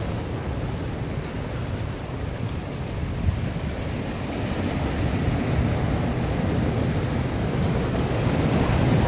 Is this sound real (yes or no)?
yes